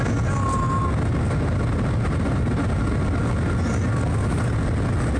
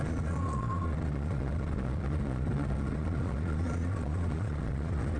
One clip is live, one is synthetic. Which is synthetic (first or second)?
second